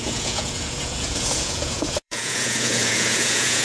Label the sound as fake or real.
fake